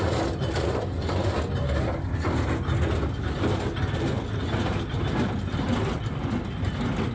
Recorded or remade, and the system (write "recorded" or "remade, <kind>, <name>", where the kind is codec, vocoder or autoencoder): recorded